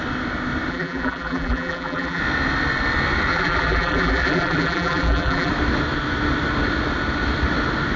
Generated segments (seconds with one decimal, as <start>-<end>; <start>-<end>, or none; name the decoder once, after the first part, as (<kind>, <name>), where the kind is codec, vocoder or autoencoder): 0.7-2.2 (vocoder, BigVGAN v2); 3.3-5.5